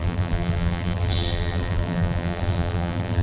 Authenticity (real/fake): fake